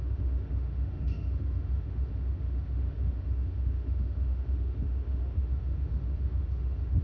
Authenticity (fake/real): fake